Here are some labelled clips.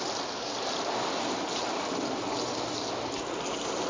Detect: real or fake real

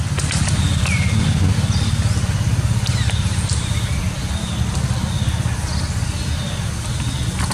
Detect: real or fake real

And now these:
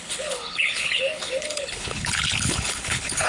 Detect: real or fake fake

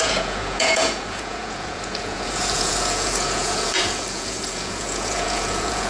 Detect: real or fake fake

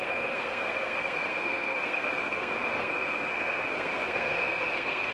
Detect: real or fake fake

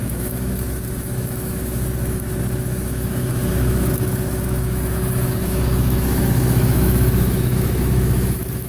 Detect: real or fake fake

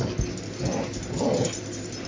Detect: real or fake real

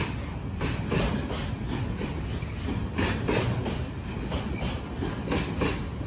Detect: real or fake real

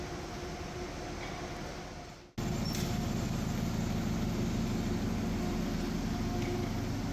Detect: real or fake real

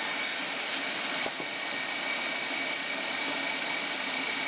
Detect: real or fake real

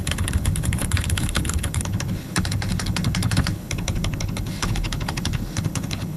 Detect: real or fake fake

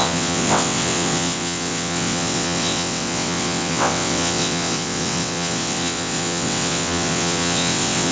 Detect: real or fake fake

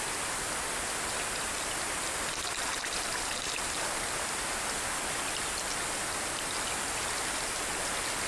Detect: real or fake real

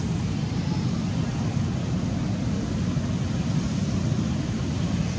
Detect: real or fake real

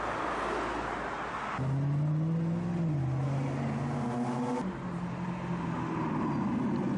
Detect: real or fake real